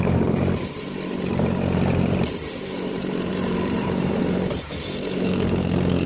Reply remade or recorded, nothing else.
remade